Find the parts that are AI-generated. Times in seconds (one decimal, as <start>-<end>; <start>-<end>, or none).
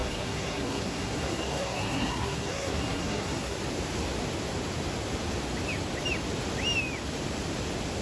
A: 0.0-3.6